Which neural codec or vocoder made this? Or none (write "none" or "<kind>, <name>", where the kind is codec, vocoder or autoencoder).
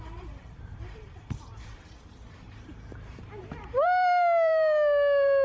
vocoder, BigVGAN v2